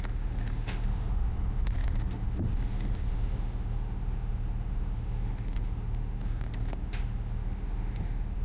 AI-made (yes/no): yes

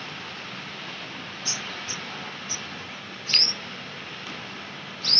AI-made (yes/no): no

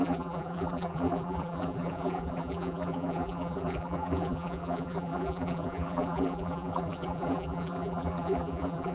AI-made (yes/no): yes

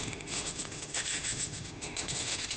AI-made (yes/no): yes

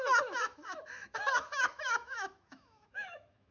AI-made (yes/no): yes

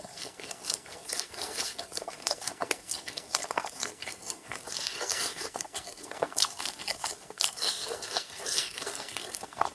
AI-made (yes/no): yes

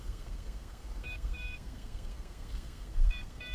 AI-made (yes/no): yes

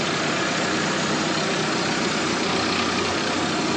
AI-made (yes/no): no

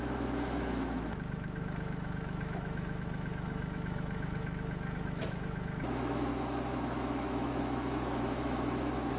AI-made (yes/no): yes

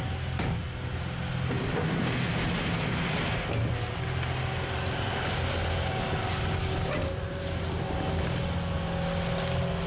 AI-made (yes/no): no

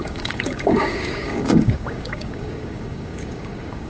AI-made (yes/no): yes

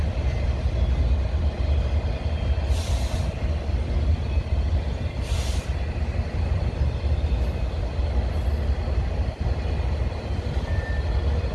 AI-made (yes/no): no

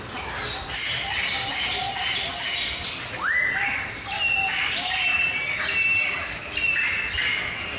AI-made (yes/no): no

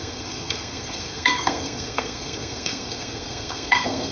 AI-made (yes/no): yes